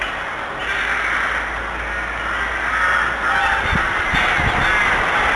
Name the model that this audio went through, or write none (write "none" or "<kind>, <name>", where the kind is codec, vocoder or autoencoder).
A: none